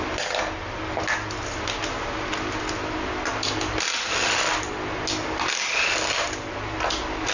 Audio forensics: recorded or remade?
recorded